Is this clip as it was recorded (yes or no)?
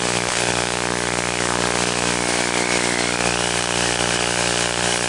no